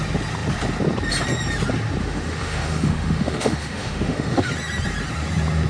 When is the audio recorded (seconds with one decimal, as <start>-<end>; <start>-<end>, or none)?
0.0-2.0; 4.5-5.7